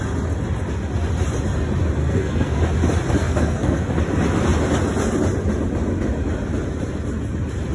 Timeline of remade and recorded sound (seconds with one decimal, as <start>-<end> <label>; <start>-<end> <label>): 0.0-2.0 recorded; 2.0-2.6 remade; 2.6-3.2 recorded; 3.2-4.0 remade; 4.0-7.7 recorded